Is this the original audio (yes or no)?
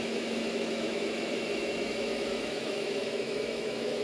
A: no